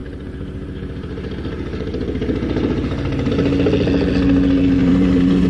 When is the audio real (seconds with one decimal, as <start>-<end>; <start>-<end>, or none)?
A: 3.3-4.8